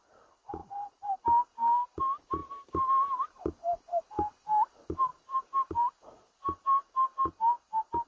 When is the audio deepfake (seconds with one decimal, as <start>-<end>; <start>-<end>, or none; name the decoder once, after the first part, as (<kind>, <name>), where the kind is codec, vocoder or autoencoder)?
0.6-2.0 (vocoder, BigVGAN v2); 2.4-3.4; 5.1-5.9